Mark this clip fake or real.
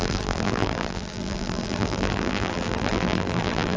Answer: fake